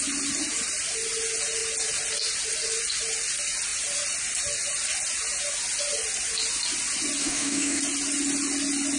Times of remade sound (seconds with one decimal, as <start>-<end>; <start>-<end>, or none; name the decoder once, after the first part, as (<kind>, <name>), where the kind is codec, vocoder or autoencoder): 7.2-7.8 (codec, DAC)